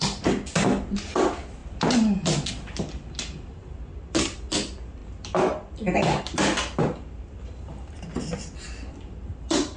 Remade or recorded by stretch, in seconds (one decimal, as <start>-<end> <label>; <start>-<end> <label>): 0.0-9.8 recorded

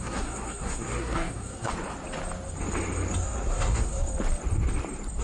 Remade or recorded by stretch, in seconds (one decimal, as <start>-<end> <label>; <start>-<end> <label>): 0.0-1.7 remade; 1.7-3.1 recorded; 3.1-4.1 remade; 4.1-5.2 recorded